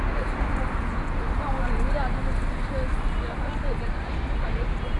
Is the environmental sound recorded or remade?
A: recorded